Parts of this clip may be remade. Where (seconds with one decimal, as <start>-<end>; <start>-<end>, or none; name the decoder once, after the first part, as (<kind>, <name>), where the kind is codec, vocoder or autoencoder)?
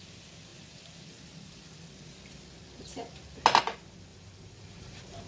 4.1-5.3 (vocoder, BigVGAN v2)